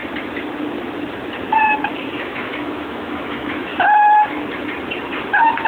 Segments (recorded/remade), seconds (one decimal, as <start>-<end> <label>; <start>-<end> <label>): 0.0-2.1 recorded; 2.1-3.7 remade; 3.7-5.7 recorded